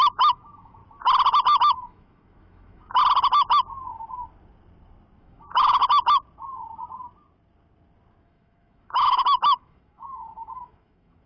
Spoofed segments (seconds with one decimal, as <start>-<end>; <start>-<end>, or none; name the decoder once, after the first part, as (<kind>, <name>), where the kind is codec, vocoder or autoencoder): 0.0-0.8 (autoencoder, DAC-VAE); 1.6-3.0; 5.2-5.8; 8.2-11.3